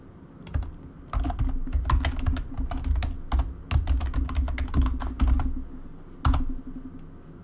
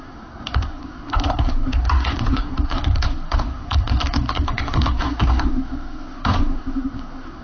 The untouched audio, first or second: first